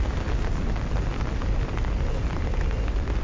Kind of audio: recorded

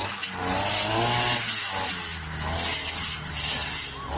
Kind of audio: recorded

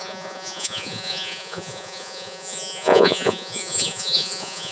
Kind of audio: remade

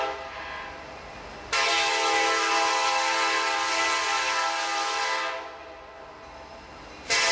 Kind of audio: recorded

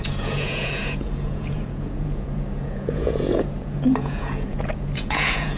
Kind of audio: remade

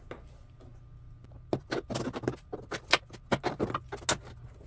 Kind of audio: recorded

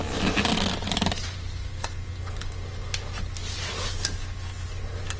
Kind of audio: recorded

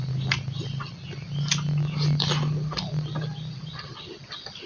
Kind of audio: recorded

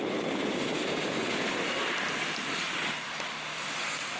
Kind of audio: recorded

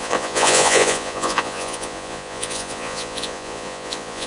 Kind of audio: remade